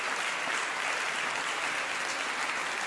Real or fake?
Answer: real